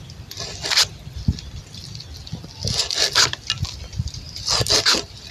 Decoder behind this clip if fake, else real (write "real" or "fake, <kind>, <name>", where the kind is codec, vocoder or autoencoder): real